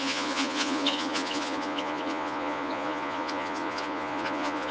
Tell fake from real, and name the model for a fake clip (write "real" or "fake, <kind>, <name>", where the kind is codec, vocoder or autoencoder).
fake, vocoder, Vocos